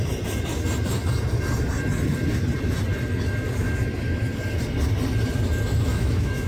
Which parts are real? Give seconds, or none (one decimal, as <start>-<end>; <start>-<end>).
0.0-5.9